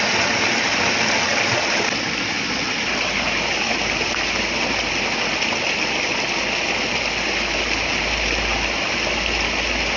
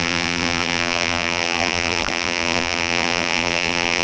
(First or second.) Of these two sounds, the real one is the first